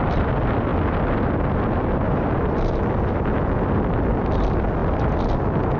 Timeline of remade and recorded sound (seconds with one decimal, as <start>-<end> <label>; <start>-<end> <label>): 0.0-5.8 remade